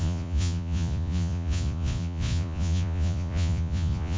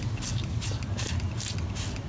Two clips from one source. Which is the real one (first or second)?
second